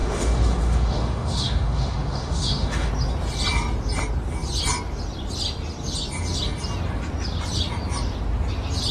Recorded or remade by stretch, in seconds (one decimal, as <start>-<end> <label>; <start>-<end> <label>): 0.0-2.9 remade; 2.9-8.9 recorded